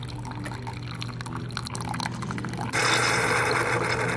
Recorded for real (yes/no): yes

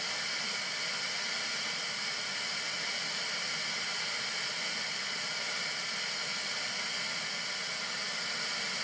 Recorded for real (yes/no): yes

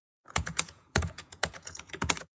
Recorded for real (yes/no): no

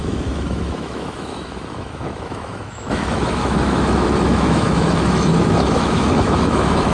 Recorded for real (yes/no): no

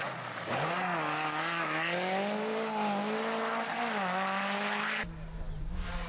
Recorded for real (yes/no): yes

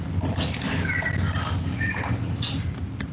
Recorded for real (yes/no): yes